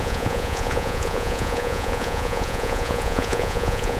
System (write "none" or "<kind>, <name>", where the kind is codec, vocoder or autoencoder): vocoder, Vocos